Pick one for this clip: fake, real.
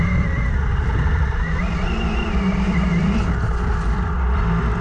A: real